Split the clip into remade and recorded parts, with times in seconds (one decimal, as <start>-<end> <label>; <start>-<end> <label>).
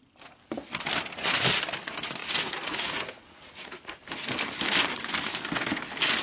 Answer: 0.0-2.2 recorded; 2.2-4.0 remade; 4.0-6.2 recorded